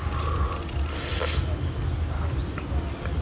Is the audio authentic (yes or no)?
yes